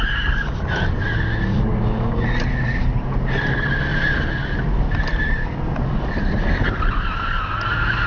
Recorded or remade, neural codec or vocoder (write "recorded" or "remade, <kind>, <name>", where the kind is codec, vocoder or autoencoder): recorded